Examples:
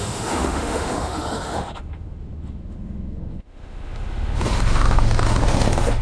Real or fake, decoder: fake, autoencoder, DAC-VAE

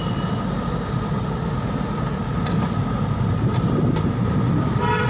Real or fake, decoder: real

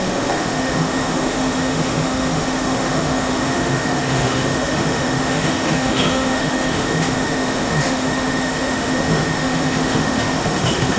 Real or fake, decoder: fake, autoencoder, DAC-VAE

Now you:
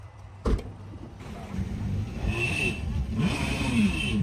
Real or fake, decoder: fake, vocoder, BigVGAN v2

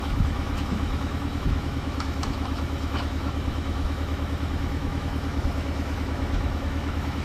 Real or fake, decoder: fake, autoencoder, DAC-VAE